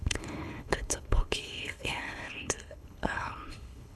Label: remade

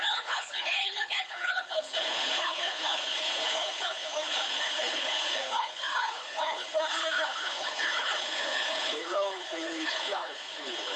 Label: remade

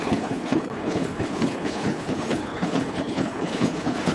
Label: remade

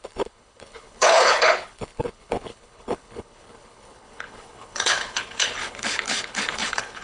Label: remade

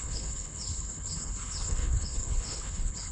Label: remade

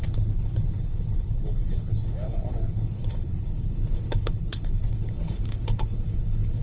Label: remade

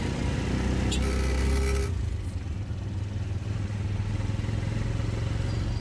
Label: recorded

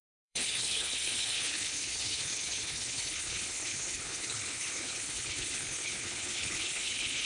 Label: remade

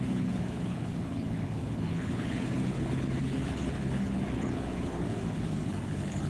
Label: remade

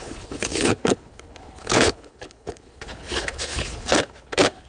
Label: remade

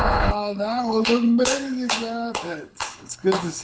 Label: remade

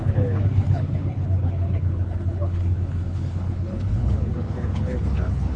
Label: remade